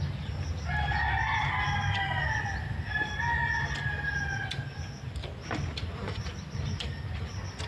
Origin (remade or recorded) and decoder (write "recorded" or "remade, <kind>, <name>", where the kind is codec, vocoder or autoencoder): recorded